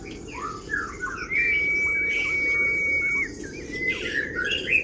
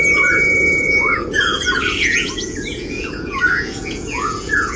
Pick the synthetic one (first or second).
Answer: second